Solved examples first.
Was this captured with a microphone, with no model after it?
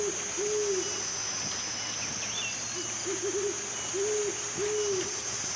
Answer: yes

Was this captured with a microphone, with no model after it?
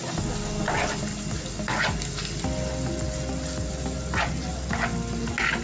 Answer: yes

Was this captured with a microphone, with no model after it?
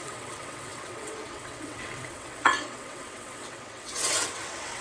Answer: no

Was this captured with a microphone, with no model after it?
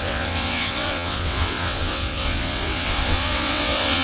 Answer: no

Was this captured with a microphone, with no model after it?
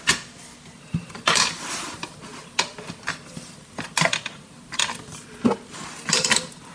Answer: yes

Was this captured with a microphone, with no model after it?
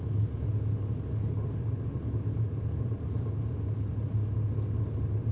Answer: yes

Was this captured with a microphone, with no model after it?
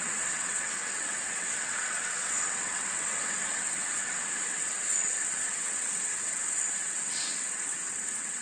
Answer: no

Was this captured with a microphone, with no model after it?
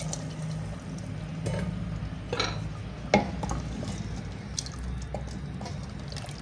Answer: yes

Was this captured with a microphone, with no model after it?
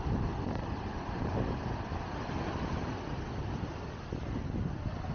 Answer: yes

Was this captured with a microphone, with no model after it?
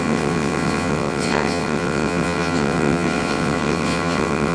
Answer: no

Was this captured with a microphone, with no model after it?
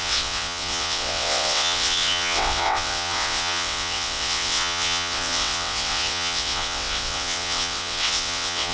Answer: no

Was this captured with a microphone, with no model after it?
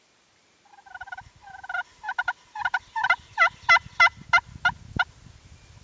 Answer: yes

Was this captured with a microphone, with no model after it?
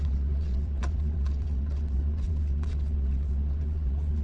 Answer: no